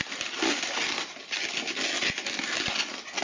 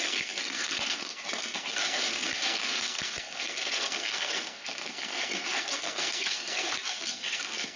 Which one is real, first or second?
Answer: first